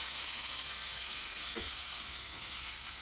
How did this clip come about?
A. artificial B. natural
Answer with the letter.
A